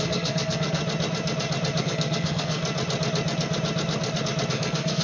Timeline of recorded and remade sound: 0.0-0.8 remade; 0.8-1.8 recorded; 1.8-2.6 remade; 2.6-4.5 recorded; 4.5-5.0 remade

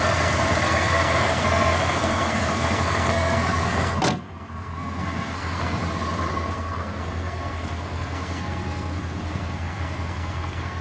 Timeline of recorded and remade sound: 0.0-5.8 remade; 5.8-6.3 recorded; 6.3-10.8 remade

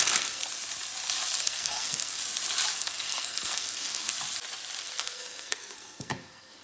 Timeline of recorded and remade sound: 0.0-0.4 remade; 0.4-1.4 recorded; 1.4-2.2 remade; 2.2-2.7 recorded; 2.7-4.1 remade; 4.1-4.8 recorded; 4.8-6.6 remade

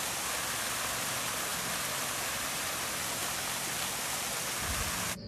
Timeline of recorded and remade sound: 0.0-5.3 recorded

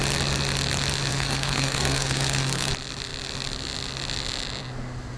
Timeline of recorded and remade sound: 0.0-1.1 recorded; 1.1-2.7 remade; 2.7-5.2 recorded

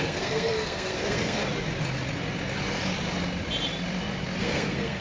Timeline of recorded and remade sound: 0.0-1.4 remade; 1.4-4.4 recorded; 4.4-5.0 remade

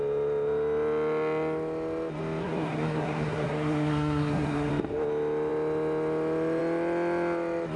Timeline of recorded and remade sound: 0.0-2.4 recorded; 2.4-4.7 remade; 4.7-7.8 recorded